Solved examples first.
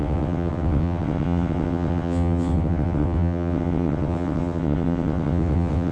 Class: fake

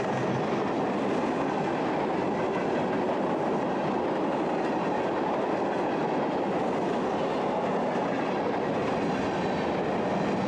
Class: real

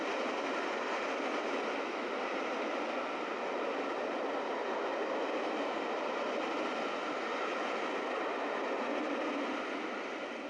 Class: real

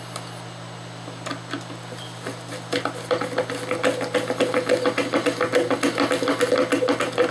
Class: real